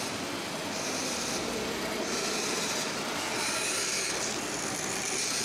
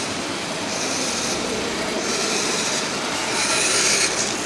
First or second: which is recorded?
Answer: first